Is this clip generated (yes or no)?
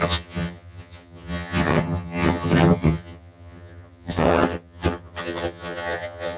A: yes